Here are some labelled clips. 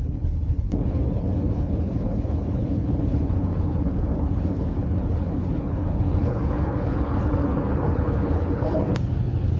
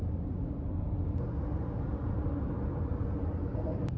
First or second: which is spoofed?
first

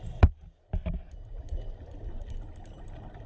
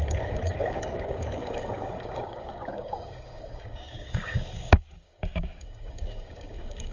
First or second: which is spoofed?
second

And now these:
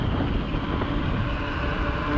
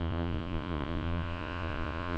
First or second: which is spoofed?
second